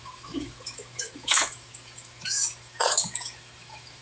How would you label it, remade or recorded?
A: remade